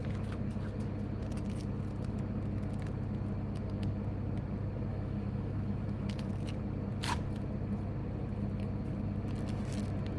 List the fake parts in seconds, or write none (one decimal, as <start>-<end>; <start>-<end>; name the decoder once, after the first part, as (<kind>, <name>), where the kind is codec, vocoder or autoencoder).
4.9-6.3 (autoencoder, DAC-VAE)